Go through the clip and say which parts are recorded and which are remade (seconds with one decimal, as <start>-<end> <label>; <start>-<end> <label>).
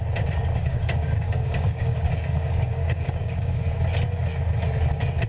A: 0.0-0.5 recorded; 0.5-3.7 remade; 3.7-5.3 recorded